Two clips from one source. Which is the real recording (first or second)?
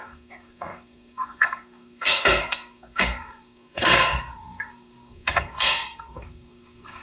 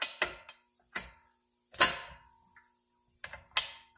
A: second